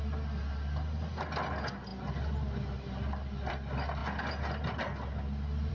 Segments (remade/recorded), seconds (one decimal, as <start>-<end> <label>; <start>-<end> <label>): 0.0-5.7 recorded

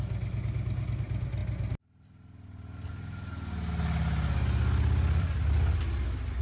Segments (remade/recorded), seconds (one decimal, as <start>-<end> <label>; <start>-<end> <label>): 0.0-6.4 recorded

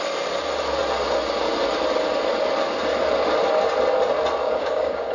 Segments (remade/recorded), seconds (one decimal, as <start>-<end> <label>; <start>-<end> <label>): 0.0-4.4 recorded; 4.4-5.1 remade

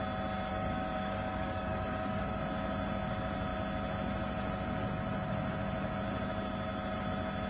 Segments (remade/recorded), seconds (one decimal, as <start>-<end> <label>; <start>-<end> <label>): 0.0-0.5 recorded; 0.5-2.4 remade; 2.4-7.5 recorded

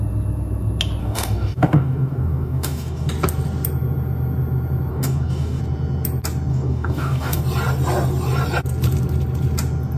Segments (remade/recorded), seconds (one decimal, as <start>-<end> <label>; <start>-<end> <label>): 0.0-1.0 recorded; 1.0-3.1 remade; 3.1-4.9 recorded; 4.9-5.6 remade; 5.6-6.5 recorded; 6.5-7.4 remade; 7.4-10.0 recorded

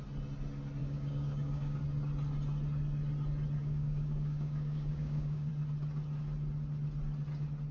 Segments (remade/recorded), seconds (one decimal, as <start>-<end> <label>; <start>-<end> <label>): 0.0-0.8 recorded; 0.8-1.8 remade; 1.8-3.6 recorded; 3.6-5.5 remade; 5.5-7.7 recorded

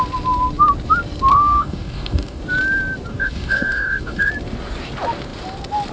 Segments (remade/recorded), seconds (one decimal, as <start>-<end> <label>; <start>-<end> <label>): 0.0-1.3 recorded; 1.3-2.4 remade; 2.4-3.1 recorded; 3.1-4.3 remade; 4.3-5.9 recorded